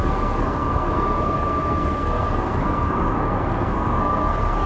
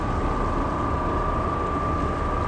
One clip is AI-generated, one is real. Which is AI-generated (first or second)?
first